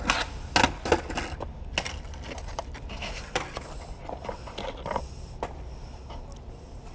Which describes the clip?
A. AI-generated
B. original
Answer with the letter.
B